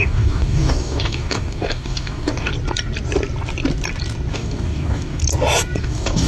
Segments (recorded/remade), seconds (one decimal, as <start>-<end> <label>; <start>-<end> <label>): 0.0-2.5 remade; 2.5-4.3 recorded; 4.3-5.2 remade; 5.2-5.8 recorded; 5.8-6.3 remade